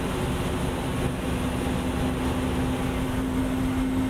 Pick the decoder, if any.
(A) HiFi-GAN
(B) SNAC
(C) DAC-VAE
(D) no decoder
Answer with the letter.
D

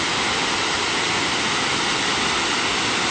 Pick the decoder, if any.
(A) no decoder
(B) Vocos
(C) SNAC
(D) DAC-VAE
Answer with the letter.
A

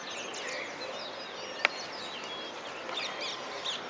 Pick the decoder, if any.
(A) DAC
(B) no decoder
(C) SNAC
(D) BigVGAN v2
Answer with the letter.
B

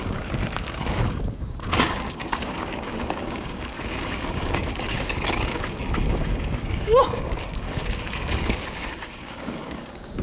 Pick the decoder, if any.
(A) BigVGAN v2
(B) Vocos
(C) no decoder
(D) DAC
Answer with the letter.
D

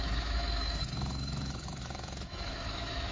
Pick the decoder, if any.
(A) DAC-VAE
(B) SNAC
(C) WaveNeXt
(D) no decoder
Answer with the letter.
A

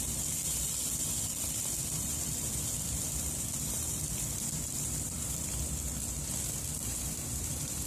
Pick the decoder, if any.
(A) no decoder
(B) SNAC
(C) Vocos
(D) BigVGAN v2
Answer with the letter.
D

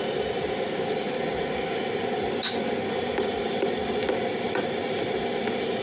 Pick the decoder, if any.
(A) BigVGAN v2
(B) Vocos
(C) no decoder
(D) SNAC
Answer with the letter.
C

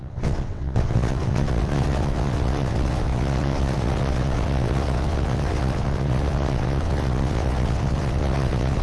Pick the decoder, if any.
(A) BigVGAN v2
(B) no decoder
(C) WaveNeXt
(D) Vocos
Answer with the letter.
C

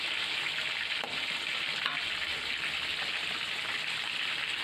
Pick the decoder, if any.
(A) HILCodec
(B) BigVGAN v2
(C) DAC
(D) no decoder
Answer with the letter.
D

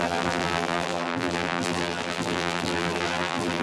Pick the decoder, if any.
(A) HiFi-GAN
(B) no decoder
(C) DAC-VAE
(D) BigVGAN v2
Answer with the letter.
D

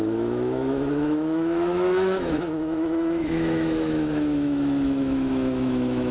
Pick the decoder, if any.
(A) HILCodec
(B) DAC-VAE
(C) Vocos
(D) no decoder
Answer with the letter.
B